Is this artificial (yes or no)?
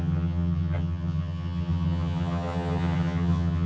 yes